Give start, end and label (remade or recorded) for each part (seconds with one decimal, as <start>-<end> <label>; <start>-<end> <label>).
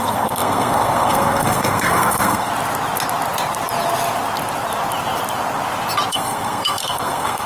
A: 0.0-2.5 remade; 2.5-6.1 recorded; 6.1-7.5 remade